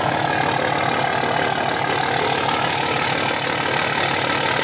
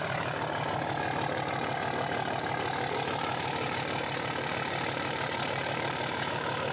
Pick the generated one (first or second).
second